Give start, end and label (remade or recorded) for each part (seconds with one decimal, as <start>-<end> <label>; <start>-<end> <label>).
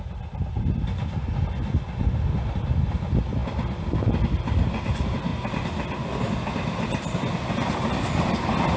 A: 0.0-8.8 recorded